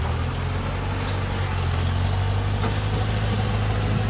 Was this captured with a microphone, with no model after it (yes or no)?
yes